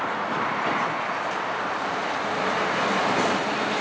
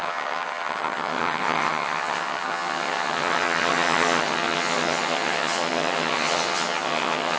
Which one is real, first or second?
first